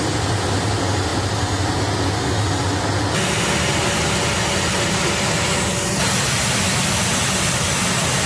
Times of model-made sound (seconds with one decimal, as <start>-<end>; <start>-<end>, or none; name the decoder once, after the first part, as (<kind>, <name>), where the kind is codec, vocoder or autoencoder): none

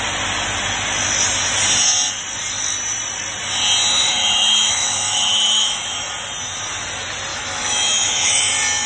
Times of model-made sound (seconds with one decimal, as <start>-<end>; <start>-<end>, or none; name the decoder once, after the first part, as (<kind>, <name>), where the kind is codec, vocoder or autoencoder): 3.9-6.1 (autoencoder, DAC-VAE); 7.3-8.4